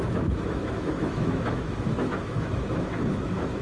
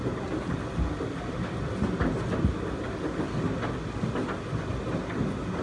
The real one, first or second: second